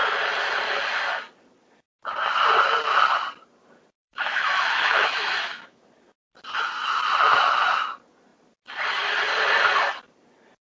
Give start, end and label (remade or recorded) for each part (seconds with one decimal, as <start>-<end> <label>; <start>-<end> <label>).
0.0-4.0 recorded; 4.0-5.8 remade; 5.8-10.6 recorded